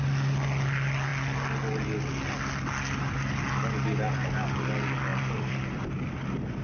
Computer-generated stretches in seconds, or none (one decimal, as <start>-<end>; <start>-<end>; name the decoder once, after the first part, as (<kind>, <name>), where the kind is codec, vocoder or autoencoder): 5.1-6.0 (vocoder, BigVGAN v2)

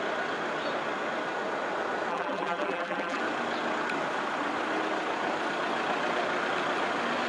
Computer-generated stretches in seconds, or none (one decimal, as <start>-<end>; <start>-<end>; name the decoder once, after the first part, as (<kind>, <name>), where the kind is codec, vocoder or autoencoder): 2.1-3.2 (vocoder, BigVGAN v2)